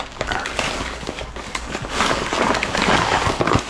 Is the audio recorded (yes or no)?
no